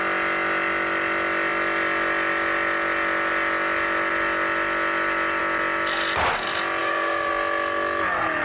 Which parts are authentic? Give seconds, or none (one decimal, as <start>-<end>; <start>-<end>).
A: 0.0-6.8; 7.3-8.4